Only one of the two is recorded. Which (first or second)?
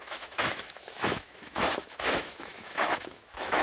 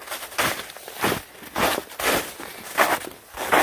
second